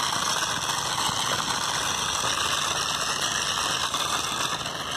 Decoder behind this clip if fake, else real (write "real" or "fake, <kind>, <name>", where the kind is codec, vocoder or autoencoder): real